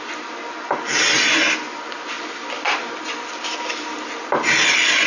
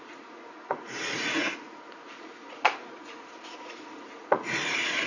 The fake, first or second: second